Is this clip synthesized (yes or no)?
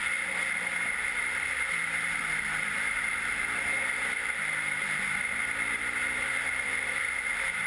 no